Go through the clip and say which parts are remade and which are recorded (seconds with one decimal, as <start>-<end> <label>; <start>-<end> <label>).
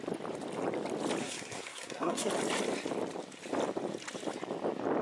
0.0-1.2 recorded; 1.2-2.3 remade; 2.3-5.0 recorded